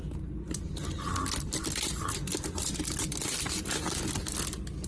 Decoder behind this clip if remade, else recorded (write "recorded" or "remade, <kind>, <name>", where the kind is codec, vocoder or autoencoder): recorded